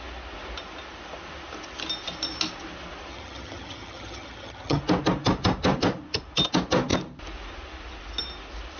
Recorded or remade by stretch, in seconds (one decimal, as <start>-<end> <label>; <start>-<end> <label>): 0.0-3.1 recorded; 3.1-4.8 remade; 4.8-8.8 recorded